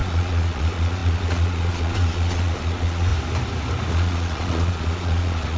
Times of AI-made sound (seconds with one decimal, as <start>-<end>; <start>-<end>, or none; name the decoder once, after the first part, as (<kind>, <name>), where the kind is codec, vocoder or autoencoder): 0.0-3.1 (vocoder, Vocos); 3.9-5.6